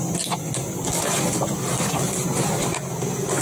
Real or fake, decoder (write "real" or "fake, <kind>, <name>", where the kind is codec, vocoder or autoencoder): real